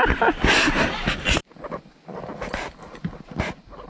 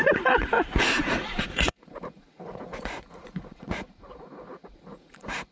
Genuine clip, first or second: first